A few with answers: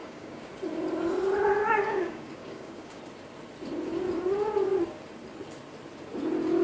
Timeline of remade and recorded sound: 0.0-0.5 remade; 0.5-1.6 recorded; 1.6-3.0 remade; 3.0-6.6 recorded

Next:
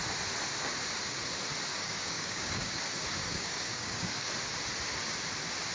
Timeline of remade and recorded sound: 0.0-1.7 recorded; 1.7-2.8 remade; 2.8-3.2 recorded; 3.2-4.3 remade; 4.3-5.7 recorded